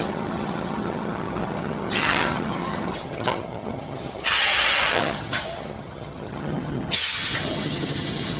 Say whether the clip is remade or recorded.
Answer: remade